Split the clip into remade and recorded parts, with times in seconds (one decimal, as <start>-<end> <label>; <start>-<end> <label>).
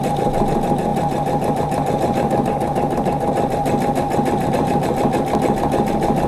0.0-6.3 recorded